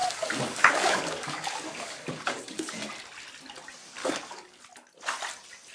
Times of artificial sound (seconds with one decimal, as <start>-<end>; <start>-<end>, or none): 0.0-2.7; 4.0-4.6